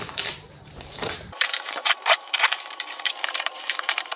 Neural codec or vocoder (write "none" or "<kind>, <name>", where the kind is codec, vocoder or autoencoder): vocoder, BigVGAN v2